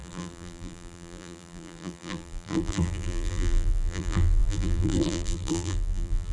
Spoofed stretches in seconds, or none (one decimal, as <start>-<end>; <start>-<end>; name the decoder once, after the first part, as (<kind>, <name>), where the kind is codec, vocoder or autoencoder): 0.0-6.3 (vocoder, BigVGAN v2)